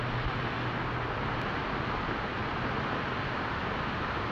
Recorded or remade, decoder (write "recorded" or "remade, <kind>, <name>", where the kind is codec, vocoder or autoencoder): recorded